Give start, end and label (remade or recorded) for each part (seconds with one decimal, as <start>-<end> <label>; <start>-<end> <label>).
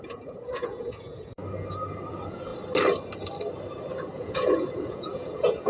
0.0-1.4 remade; 1.4-2.1 recorded; 2.1-2.5 remade; 2.5-4.1 recorded; 4.1-5.7 remade